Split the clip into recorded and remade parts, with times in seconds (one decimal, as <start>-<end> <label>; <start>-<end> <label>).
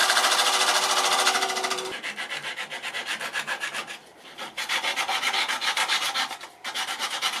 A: 0.0-4.0 remade; 4.0-4.5 recorded; 4.5-7.4 remade